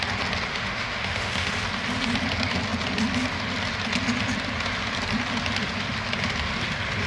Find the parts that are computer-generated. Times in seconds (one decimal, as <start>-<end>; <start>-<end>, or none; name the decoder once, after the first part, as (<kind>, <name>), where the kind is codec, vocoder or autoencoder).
0.5-1.5 (autoencoder, DAC-VAE)

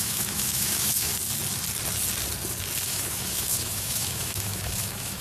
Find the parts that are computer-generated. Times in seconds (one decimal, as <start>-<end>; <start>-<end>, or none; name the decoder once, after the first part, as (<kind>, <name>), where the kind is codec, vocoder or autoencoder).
0.0-1.1 (autoencoder, DAC-VAE); 2.9-5.2

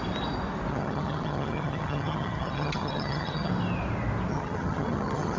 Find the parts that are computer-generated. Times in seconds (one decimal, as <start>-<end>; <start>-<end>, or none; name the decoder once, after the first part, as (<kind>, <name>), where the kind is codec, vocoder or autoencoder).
0.7-3.5 (vocoder, HiFi-GAN); 4.3-5.4

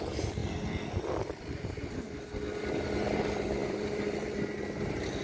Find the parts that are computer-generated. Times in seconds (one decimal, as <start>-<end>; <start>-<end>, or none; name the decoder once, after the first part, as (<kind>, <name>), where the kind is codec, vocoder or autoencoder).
3.6-4.5 (vocoder, BigVGAN v2)

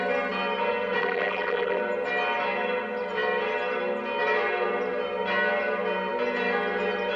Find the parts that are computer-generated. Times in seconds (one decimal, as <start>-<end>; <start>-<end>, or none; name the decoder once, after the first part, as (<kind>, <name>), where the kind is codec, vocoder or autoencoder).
1.0-1.8 (vocoder, BigVGAN v2)